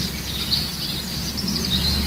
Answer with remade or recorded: recorded